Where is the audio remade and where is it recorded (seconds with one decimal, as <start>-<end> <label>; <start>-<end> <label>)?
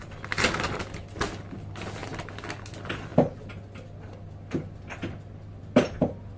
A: 0.0-6.4 recorded